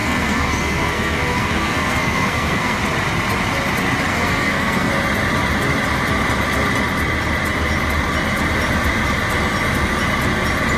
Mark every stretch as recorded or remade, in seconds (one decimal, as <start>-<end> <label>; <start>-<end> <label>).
0.0-2.8 remade; 2.8-4.1 recorded; 4.1-4.9 remade; 4.9-10.8 recorded